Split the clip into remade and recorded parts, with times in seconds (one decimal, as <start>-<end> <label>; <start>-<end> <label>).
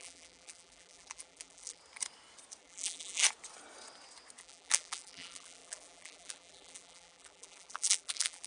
0.0-1.8 remade; 1.8-2.6 recorded; 2.6-3.2 remade; 3.2-4.4 recorded; 4.4-8.5 remade